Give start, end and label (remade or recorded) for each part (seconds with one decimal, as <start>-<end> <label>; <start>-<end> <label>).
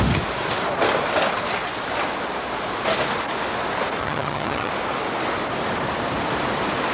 0.0-4.0 recorded; 4.0-4.7 remade; 4.7-6.9 recorded